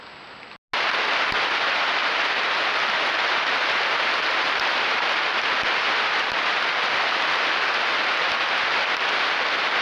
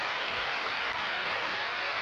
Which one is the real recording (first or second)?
first